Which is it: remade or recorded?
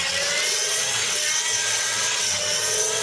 remade